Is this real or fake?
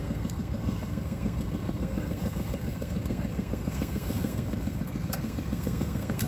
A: fake